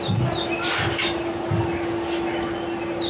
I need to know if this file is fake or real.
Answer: real